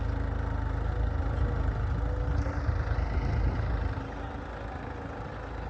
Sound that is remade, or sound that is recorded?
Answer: recorded